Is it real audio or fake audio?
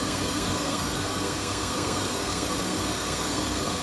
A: fake